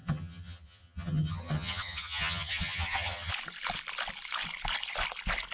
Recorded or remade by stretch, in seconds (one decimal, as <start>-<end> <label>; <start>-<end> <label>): 0.0-3.3 remade; 3.3-5.5 recorded